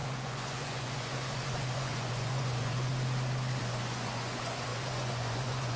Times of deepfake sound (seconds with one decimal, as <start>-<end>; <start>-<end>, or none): 0.0-2.9; 3.6-5.8